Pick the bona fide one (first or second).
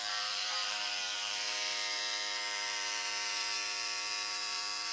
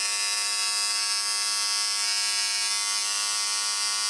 second